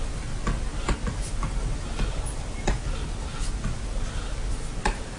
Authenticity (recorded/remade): recorded